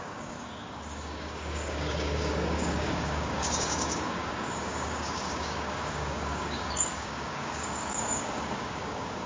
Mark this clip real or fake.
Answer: fake